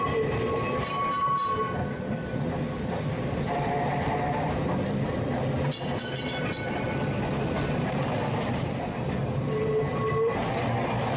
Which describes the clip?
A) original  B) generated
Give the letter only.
A